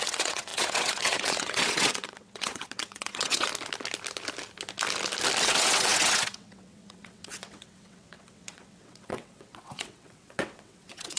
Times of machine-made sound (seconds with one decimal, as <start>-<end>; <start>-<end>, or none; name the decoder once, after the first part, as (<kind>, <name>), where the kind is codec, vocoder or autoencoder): 0.0-3.5 (vocoder, WaveNeXt); 5.4-11.2